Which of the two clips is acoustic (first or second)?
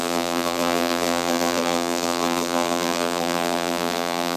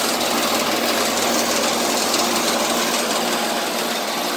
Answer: second